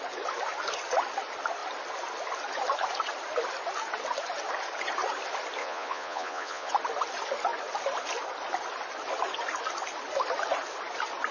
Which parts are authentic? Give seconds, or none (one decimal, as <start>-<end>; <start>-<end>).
0.0-5.6; 6.7-11.3